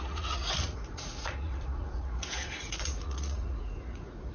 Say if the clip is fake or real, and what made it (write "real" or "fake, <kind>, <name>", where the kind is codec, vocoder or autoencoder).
fake, vocoder, Vocos